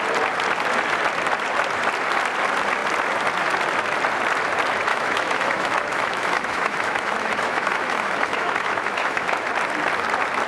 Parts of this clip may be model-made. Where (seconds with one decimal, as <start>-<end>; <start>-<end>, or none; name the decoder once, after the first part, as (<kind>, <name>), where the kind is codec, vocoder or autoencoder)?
4.9-9.5 (autoencoder, DAC-VAE)